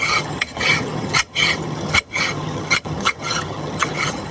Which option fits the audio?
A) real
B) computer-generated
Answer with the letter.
B